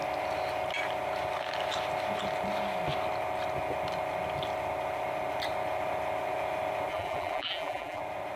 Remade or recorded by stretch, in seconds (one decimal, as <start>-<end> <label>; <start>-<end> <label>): 0.0-6.9 recorded; 6.9-8.0 remade; 8.0-8.4 recorded

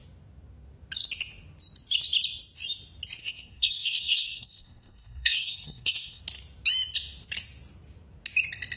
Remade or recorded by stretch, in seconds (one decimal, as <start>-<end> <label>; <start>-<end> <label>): 0.0-3.2 recorded; 3.2-6.2 remade; 6.2-8.8 recorded

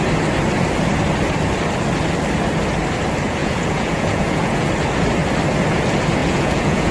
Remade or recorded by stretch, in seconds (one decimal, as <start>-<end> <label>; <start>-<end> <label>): 0.0-3.4 recorded; 3.4-4.7 remade; 4.7-6.2 recorded; 6.2-6.9 remade

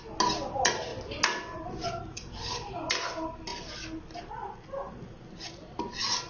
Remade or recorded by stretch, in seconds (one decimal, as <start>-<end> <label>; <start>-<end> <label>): 0.0-0.9 recorded; 0.9-1.7 remade; 1.7-3.5 recorded; 3.5-4.0 remade; 4.0-6.3 recorded

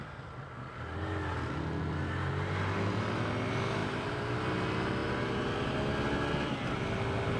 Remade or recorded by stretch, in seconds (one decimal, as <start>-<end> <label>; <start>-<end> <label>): 0.0-3.8 recorded; 3.8-4.4 remade; 4.4-5.0 recorded; 5.0-5.7 remade; 5.7-7.4 recorded

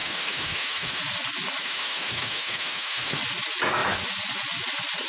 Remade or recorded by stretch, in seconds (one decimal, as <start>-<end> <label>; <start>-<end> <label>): 0.0-1.0 remade; 1.0-1.6 recorded; 1.6-3.2 remade; 3.2-5.1 recorded

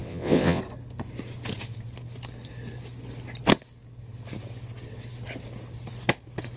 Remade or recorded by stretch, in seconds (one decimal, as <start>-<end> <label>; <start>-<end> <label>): 0.0-0.6 remade; 0.6-6.6 recorded

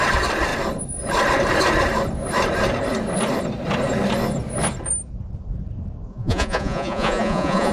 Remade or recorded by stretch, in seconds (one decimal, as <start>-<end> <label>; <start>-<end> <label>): 0.0-6.1 recorded; 6.1-7.7 remade